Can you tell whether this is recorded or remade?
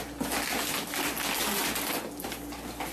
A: recorded